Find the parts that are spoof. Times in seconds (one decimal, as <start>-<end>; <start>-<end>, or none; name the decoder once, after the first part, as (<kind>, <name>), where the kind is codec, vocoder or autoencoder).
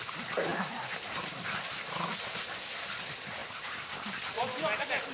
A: none